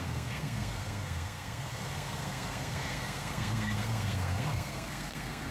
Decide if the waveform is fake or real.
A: fake